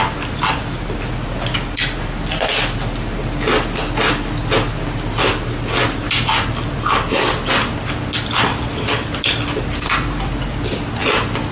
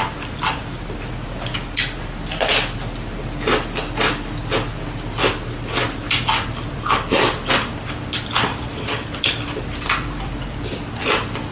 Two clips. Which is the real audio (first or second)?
first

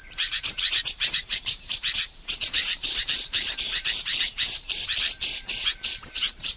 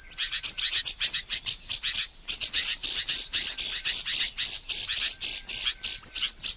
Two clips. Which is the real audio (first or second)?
second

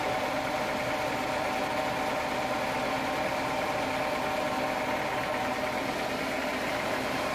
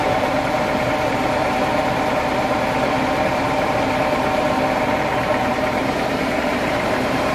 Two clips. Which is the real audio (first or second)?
first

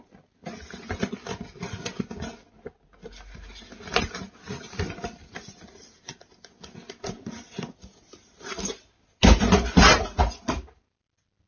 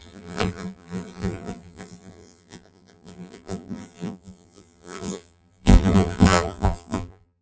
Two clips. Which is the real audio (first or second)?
first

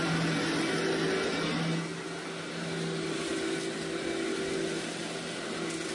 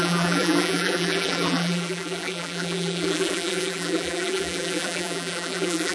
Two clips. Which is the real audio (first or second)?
first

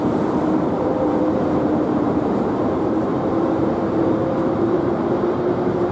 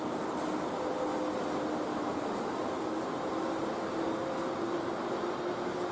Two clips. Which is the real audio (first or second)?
second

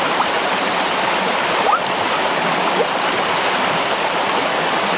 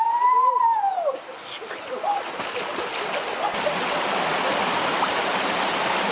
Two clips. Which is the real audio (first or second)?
second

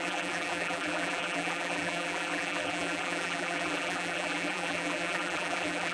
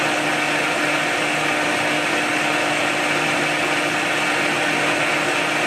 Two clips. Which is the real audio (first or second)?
second